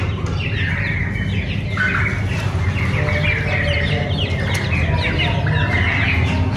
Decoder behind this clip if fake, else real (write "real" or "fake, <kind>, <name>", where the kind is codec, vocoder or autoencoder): real